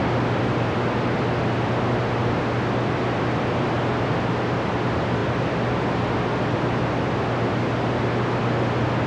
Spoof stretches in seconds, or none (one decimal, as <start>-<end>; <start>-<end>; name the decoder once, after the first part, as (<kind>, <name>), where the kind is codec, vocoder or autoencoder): none